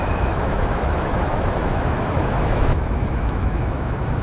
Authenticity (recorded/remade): remade